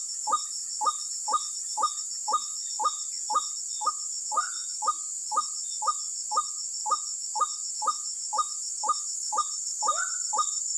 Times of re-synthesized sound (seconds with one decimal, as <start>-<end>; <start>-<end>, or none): 0.0-0.6; 1.1-2.5; 6.1-6.8; 7.7-10.8